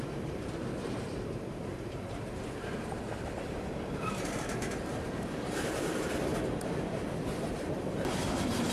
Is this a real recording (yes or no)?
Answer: no